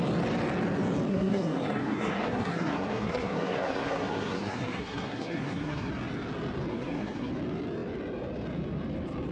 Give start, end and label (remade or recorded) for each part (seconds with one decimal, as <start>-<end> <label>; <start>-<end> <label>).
0.0-1.1 recorded; 1.1-5.9 remade; 5.9-6.7 recorded; 6.7-7.3 remade; 7.3-9.3 recorded